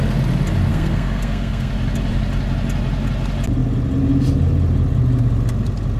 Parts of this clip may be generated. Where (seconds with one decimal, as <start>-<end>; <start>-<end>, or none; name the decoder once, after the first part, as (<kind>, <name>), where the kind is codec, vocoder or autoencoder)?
0.7-1.7 (codec, SNAC)